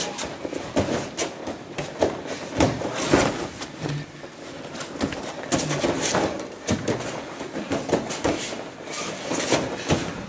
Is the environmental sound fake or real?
real